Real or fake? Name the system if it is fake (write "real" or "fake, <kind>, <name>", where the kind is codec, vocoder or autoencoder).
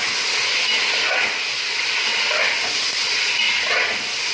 real